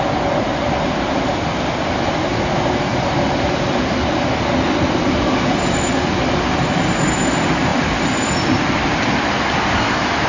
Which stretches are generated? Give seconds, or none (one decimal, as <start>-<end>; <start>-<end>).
0.5-1.2; 7.7-9.3